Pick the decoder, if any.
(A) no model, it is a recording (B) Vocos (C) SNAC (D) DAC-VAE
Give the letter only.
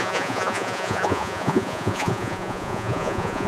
B